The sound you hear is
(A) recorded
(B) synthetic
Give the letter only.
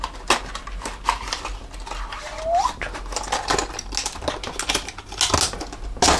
A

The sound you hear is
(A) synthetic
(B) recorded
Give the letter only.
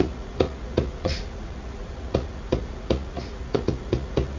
A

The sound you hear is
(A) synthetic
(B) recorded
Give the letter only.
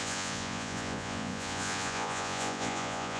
A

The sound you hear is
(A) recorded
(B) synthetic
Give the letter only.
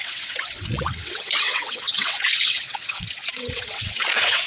B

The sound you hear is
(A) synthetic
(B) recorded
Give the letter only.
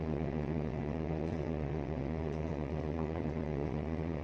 A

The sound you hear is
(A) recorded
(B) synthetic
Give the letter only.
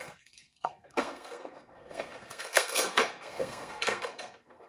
B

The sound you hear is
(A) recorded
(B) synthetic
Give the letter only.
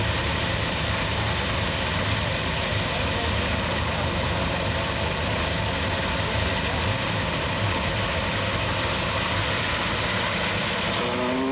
A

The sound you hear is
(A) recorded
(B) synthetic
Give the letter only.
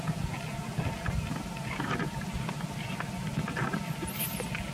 A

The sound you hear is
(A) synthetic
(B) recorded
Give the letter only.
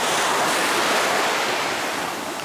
B